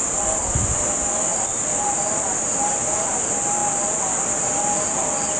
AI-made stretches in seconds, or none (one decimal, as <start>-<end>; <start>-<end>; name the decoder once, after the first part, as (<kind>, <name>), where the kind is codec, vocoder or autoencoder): 1.3-3.2 (vocoder, BigVGAN v2)